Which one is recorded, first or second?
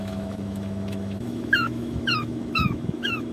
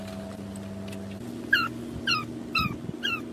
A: second